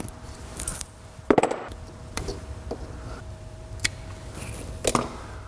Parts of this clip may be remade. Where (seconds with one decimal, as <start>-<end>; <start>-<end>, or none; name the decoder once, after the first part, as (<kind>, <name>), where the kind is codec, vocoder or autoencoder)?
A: 0.7-4.0 (vocoder, BigVGAN v2)